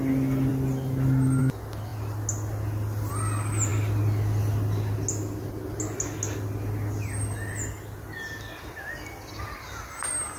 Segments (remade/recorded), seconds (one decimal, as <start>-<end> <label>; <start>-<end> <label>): 0.0-10.4 recorded